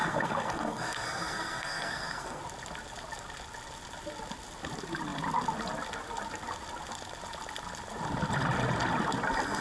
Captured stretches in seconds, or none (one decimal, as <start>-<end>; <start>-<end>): 2.4-9.6